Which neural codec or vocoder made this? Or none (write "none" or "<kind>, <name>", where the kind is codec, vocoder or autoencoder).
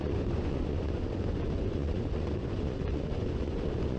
vocoder, Vocos